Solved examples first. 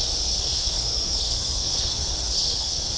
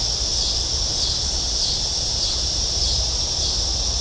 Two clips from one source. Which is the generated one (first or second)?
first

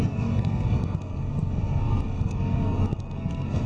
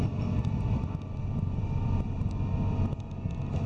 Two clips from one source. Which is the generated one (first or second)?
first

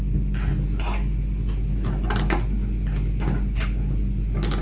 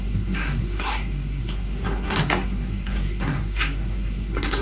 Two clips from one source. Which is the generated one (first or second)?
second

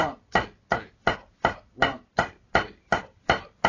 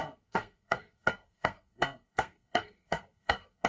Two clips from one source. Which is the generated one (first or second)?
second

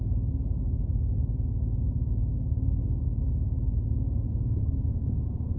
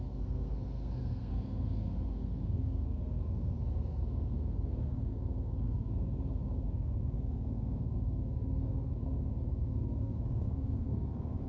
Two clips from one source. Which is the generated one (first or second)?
second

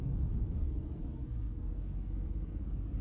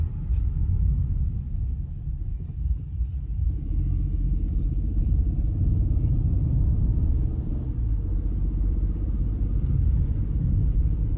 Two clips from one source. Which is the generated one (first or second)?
first